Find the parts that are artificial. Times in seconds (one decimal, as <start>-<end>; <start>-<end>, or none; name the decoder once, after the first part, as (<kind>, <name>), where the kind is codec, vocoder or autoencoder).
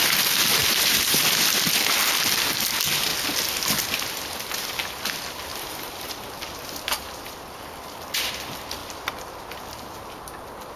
0.6-1.2 (vocoder, BigVGAN v2)